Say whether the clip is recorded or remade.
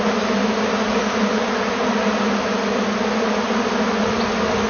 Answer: recorded